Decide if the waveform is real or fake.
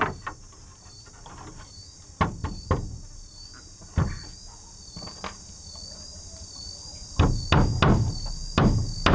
real